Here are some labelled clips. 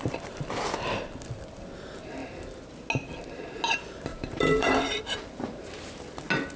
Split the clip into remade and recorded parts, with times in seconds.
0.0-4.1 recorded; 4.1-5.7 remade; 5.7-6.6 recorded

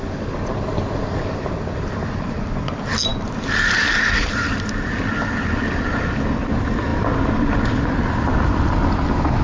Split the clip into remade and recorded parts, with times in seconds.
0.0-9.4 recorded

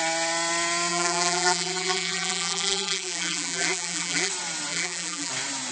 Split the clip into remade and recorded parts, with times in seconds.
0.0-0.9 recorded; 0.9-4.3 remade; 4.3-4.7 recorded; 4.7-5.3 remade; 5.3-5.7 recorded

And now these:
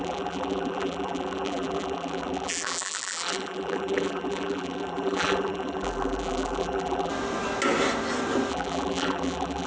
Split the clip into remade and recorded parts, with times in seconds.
0.0-7.1 remade; 7.1-8.5 recorded; 8.5-9.7 remade

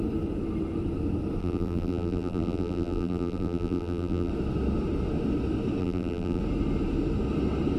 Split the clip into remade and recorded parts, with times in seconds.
0.0-1.4 recorded; 1.4-4.3 remade; 4.3-5.8 recorded; 5.8-6.4 remade; 6.4-7.8 recorded